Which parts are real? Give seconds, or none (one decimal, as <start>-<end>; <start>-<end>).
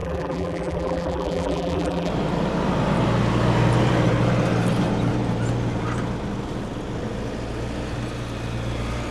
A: 2.1-9.1